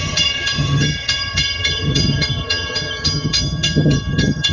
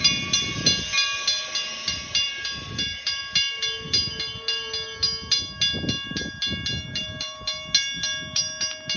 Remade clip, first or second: first